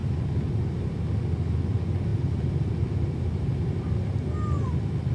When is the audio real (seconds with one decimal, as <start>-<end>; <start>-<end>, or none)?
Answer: 0.0-5.1